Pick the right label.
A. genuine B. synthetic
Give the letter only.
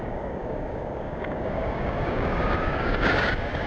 B